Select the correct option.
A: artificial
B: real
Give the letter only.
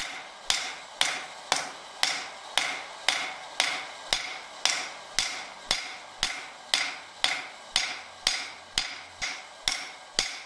B